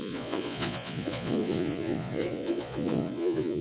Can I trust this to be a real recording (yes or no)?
no